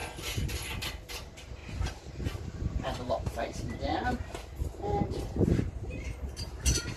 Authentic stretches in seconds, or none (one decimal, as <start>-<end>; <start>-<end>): 0.0-1.1; 1.6-3.0; 3.9-5.1